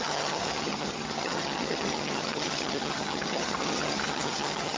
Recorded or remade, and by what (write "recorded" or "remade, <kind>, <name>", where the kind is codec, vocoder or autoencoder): remade, vocoder, HiFi-GAN